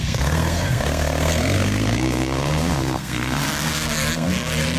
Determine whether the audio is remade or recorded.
remade